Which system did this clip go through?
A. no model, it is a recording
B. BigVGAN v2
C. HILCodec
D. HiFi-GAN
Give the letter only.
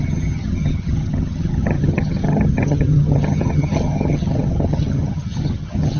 D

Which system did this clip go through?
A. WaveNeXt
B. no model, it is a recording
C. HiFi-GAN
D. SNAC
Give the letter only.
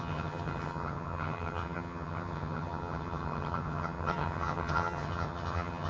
C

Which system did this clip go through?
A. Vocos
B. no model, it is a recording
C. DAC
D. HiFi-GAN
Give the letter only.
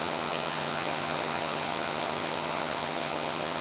D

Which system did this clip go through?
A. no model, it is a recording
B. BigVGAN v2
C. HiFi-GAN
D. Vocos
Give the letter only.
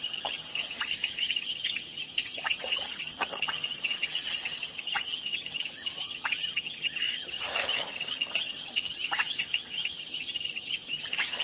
C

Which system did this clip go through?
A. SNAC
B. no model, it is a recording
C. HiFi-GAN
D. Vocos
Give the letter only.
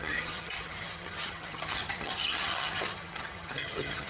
C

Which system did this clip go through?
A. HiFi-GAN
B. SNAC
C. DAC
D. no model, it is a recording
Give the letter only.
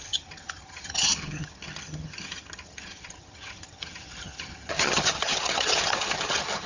A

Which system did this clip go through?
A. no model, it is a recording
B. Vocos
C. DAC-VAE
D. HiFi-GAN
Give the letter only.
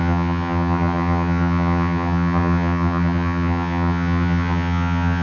D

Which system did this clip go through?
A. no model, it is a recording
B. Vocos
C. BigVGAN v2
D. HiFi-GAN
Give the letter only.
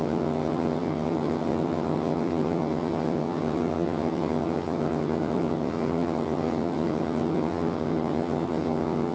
D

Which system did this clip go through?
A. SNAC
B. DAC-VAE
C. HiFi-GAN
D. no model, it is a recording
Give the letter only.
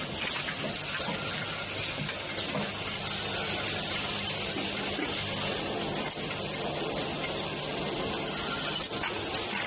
D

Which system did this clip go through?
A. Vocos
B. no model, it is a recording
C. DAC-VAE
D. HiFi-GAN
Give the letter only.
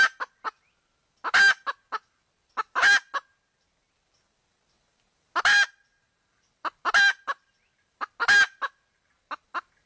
B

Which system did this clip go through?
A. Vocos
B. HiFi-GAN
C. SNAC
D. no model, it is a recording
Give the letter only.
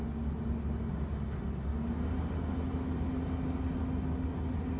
D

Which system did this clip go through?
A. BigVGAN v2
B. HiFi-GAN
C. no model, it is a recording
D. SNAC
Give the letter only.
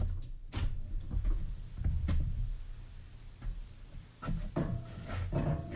C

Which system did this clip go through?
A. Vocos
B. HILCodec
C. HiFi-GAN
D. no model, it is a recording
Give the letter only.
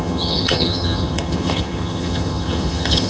C